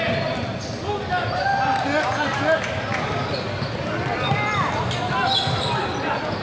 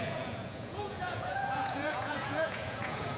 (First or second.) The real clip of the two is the first